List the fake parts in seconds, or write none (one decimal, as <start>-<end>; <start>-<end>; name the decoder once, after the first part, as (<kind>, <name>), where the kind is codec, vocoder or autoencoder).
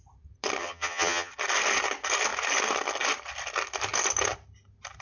0.6-1.3 (vocoder, HiFi-GAN)